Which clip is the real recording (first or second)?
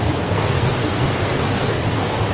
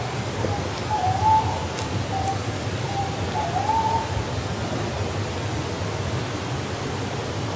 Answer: second